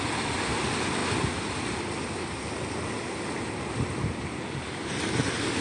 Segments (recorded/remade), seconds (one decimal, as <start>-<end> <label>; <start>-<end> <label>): 0.0-5.6 recorded